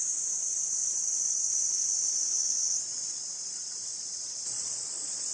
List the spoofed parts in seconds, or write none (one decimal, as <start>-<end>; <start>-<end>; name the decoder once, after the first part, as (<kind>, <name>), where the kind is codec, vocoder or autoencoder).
0.0-5.3 (vocoder, Vocos)